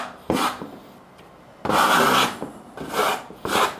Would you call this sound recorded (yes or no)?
yes